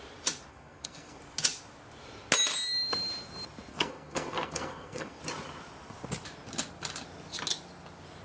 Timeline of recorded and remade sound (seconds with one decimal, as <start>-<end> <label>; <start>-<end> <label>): 0.0-0.5 recorded; 0.5-1.2 remade; 1.2-3.7 recorded; 3.7-5.2 remade; 5.2-8.2 recorded